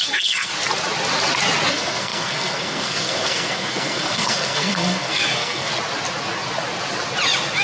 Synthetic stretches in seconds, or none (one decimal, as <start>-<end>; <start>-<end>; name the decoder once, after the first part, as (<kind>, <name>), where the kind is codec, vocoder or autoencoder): 0.0-0.5 (codec, SNAC); 1.7-5.7